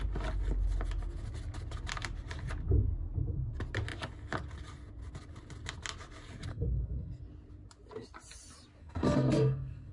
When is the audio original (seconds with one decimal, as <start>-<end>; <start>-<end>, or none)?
0.0-6.5; 7.2-8.8